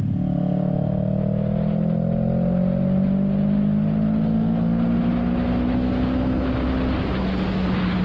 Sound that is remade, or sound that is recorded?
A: recorded